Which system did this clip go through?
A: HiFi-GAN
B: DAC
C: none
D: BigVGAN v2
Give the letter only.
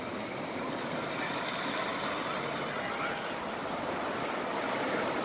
C